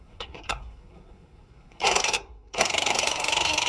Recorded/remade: remade